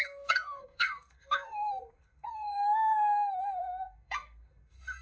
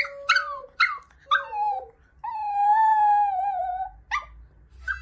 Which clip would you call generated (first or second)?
first